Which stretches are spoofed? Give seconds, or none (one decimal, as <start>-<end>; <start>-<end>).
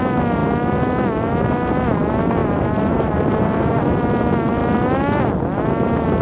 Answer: 2.4-3.4